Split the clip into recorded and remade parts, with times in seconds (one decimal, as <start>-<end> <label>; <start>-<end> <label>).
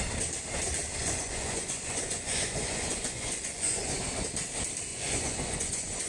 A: 0.0-1.0 recorded; 1.0-4.0 remade; 4.0-4.9 recorded; 4.9-6.1 remade